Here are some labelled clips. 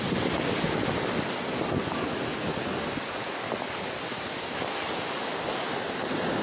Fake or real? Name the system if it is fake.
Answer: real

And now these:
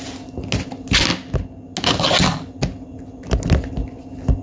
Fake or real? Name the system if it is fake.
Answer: real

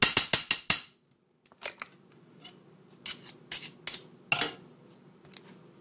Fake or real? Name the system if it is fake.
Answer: real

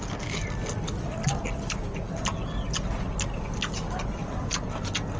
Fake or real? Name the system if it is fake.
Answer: real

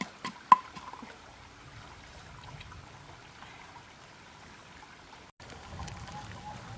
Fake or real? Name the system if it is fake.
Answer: real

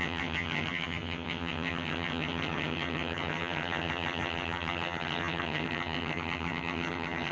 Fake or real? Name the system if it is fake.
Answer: fake, vocoder, HiFi-GAN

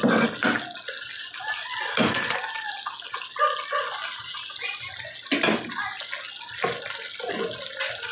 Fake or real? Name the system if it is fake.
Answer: real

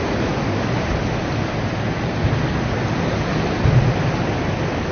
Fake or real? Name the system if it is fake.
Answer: real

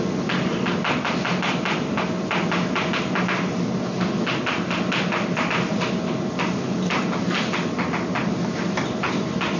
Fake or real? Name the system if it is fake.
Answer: real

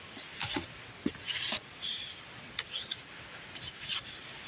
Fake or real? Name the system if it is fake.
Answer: real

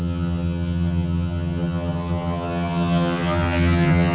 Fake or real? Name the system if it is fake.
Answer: fake, vocoder, HiFi-GAN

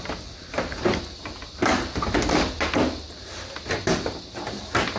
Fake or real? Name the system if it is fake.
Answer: real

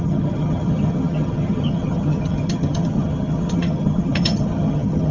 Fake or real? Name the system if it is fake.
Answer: fake, vocoder, HiFi-GAN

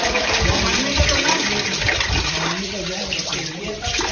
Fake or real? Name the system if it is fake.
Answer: real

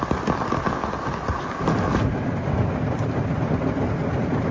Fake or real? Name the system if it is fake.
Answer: real